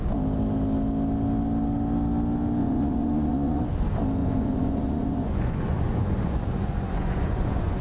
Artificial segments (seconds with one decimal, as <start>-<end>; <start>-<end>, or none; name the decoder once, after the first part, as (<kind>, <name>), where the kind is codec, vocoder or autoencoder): 2.6-3.6 (vocoder, Vocos); 4.2-7.8